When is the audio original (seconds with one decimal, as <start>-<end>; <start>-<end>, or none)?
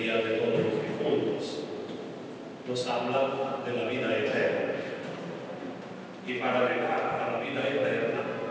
0.0-8.5